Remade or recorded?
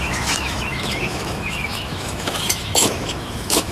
remade